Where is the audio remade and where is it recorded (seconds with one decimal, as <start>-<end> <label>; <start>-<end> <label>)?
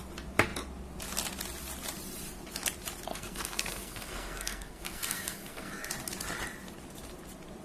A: 0.0-3.1 recorded; 3.1-5.9 remade; 5.9-7.6 recorded